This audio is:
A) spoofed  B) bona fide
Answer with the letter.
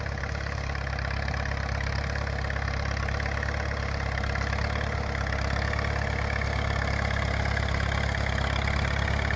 B